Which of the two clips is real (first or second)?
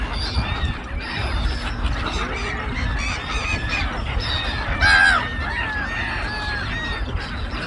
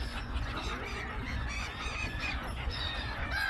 first